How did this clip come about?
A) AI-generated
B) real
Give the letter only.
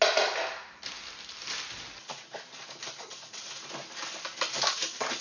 B